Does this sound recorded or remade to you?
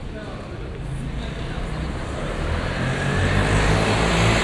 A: recorded